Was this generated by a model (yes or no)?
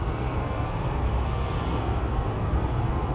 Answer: yes